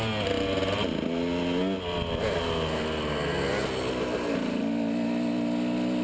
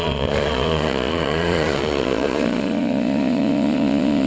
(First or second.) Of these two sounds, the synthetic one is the second